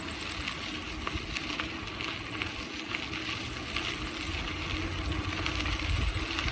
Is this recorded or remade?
recorded